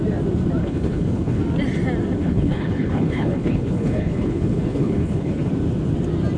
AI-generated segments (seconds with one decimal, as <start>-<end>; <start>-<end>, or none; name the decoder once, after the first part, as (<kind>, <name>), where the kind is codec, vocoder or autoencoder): 0.6-1.4 (codec, HILCodec); 2.2-5.5